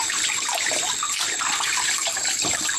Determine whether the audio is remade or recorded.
remade